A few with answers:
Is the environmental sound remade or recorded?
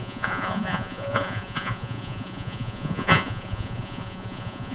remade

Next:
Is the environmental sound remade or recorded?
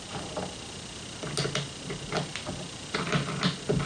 recorded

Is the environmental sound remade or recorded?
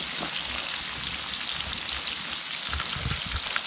recorded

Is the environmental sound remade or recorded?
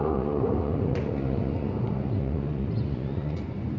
remade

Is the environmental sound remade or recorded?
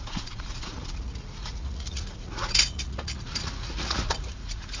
remade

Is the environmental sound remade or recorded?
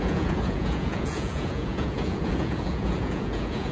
remade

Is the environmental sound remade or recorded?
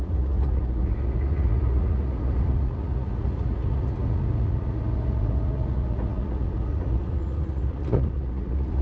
remade